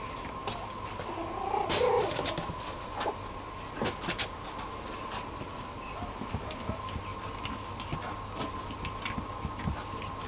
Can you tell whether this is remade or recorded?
recorded